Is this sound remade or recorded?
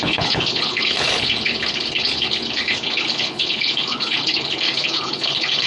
remade